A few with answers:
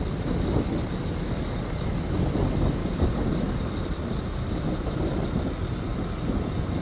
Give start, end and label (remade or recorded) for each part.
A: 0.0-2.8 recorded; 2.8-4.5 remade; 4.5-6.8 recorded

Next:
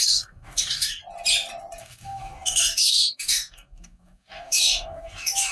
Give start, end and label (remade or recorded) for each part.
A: 0.0-1.0 remade; 1.0-1.8 recorded; 1.8-5.5 remade

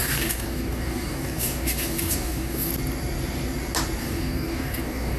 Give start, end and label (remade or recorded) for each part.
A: 0.0-2.7 remade; 2.7-4.0 recorded; 4.0-5.2 remade

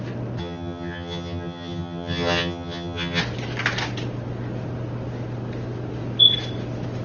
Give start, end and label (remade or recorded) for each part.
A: 0.0-0.4 recorded; 0.4-3.2 remade; 3.2-7.0 recorded

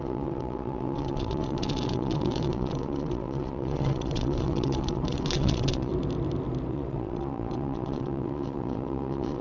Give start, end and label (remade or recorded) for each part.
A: 0.0-5.9 remade; 5.9-6.7 recorded; 6.7-9.4 remade

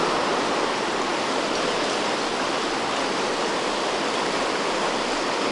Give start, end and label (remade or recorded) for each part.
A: 0.0-5.5 recorded